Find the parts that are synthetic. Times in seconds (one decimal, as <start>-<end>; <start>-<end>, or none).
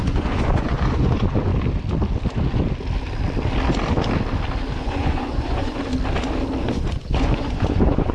0.0-1.5; 4.8-5.9; 6.6-8.1